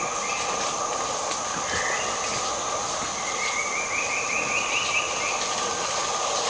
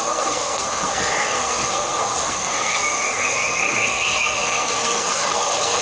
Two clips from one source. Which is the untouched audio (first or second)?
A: first